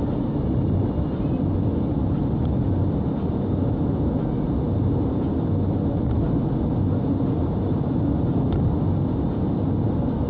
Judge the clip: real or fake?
real